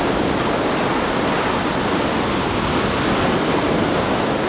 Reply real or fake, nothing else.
real